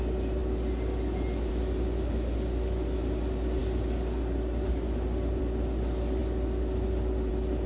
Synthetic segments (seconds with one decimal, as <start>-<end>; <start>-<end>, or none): none